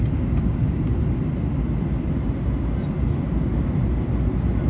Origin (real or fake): real